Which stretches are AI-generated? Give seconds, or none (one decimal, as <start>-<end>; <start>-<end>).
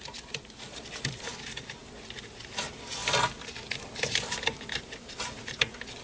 none